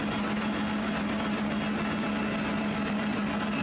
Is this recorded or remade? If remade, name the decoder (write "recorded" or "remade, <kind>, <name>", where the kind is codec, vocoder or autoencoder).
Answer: recorded